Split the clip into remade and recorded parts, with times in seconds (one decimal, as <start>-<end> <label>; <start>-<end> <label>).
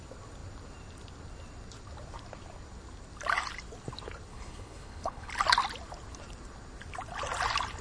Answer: 0.0-4.3 recorded; 4.3-5.3 remade; 5.3-7.8 recorded